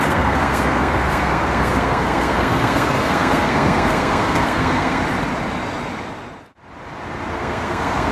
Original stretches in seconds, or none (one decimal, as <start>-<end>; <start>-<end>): 5.0-7.3